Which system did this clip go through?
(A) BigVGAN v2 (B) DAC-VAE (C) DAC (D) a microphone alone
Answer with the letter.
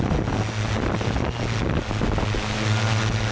D